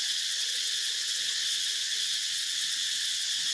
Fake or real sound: fake